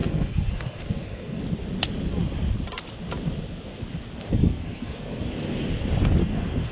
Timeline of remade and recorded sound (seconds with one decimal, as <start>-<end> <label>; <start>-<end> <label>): 0.0-1.4 remade; 1.4-4.3 recorded; 4.3-5.2 remade; 5.2-6.2 recorded; 6.2-6.7 remade

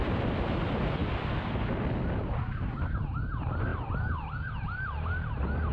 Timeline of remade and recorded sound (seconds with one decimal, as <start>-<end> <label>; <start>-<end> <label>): 0.0-5.7 recorded

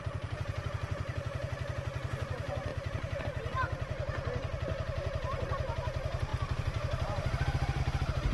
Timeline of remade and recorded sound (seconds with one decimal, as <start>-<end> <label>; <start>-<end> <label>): 0.0-6.3 recorded; 6.3-7.8 remade; 7.8-8.3 recorded

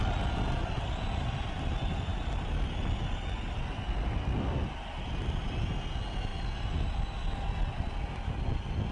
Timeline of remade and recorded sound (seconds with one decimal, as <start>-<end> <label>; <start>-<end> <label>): 0.0-8.9 recorded

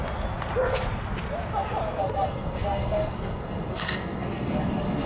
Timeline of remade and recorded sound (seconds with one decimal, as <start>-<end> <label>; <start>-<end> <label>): 0.0-2.0 recorded; 2.0-5.1 remade

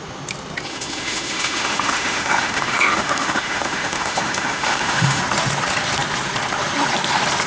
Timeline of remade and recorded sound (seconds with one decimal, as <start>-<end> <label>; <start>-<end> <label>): 0.0-0.7 recorded; 0.7-5.2 remade; 5.2-7.5 recorded

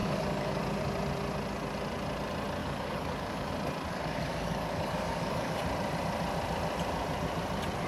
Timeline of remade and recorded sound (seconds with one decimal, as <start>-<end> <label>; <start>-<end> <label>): 0.0-0.6 remade; 0.6-2.6 recorded; 2.6-3.5 remade; 3.5-3.9 recorded; 3.9-5.6 remade; 5.6-7.9 recorded